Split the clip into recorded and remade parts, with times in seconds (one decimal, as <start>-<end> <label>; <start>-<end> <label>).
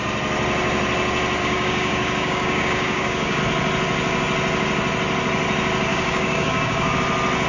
0.0-1.4 recorded; 1.4-3.4 remade; 3.4-5.9 recorded; 5.9-7.0 remade; 7.0-7.5 recorded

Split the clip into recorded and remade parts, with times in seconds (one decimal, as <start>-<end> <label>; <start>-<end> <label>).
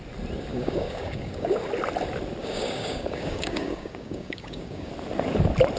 0.0-0.5 recorded; 0.5-1.6 remade; 1.6-2.4 recorded; 2.4-4.9 remade; 4.9-5.8 recorded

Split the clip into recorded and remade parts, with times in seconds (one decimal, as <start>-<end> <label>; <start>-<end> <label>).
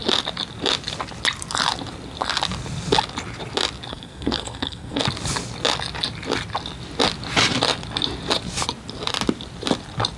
0.0-3.9 recorded; 3.9-5.0 remade; 5.0-10.2 recorded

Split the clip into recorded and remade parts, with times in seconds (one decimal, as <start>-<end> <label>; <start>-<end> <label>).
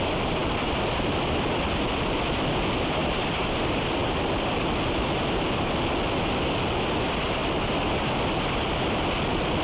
0.0-9.6 recorded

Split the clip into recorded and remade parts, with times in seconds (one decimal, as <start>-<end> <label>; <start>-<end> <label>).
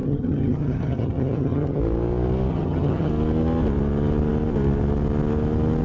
0.0-1.8 remade; 1.8-2.5 recorded; 2.5-3.1 remade; 3.1-5.8 recorded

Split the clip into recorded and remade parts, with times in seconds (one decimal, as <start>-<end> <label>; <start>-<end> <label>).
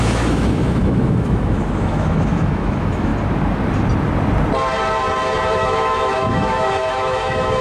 0.0-3.1 remade; 3.1-5.5 recorded; 5.5-7.6 remade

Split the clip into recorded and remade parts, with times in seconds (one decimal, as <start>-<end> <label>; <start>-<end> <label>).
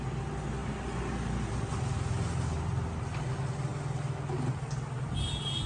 0.0-5.7 recorded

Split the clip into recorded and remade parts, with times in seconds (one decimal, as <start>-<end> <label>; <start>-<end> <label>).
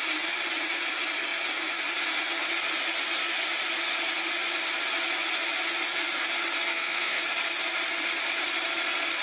0.0-6.7 recorded; 6.7-7.2 remade; 7.2-9.2 recorded